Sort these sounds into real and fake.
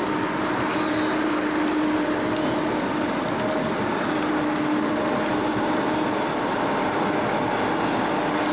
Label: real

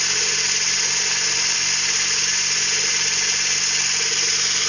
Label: real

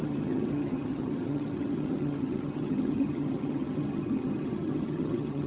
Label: fake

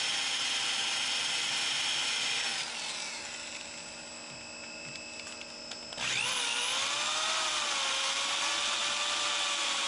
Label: real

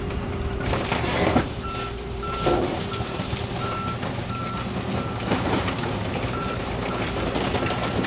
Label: fake